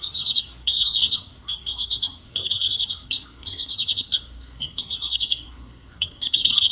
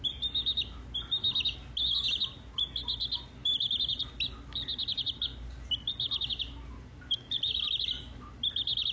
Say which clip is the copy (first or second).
first